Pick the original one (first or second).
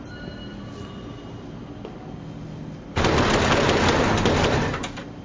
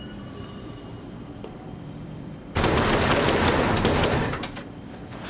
first